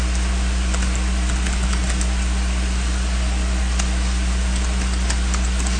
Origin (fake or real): real